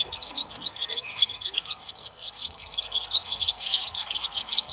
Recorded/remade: remade